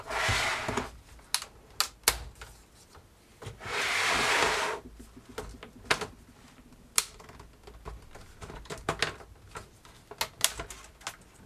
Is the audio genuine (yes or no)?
yes